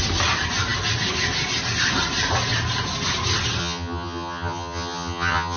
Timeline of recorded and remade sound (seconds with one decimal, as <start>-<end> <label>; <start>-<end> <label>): 0.0-3.6 recorded; 3.6-5.6 remade